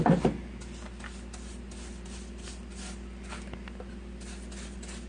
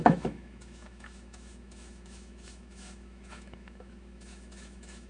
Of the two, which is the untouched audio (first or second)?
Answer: first